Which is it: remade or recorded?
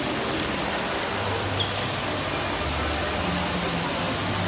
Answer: recorded